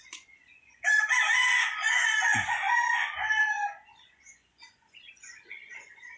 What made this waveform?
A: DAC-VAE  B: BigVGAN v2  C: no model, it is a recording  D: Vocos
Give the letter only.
D